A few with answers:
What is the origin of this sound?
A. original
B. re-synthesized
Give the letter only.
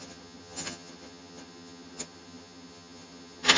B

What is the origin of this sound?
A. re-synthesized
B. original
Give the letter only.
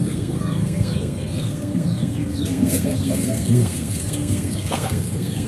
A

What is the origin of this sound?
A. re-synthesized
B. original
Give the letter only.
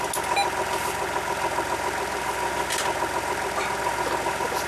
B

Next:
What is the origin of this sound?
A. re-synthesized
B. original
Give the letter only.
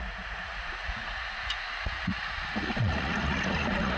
A